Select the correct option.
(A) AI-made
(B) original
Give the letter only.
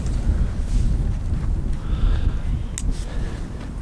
B